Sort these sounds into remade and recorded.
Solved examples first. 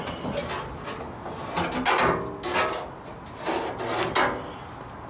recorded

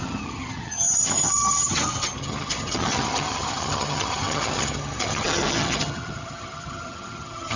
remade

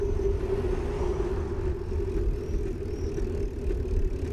recorded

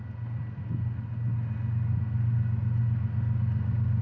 recorded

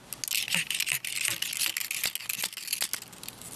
recorded